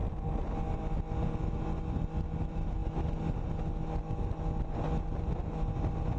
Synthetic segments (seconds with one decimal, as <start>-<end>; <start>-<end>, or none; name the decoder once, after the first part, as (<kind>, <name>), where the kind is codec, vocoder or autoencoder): none